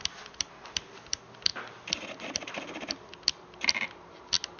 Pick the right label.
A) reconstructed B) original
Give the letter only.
B